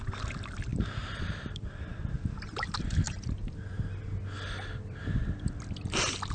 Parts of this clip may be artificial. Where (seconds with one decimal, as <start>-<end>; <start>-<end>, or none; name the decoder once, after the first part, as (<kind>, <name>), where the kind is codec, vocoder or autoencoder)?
0.7-3.6 (vocoder, BigVGAN v2); 5.0-5.6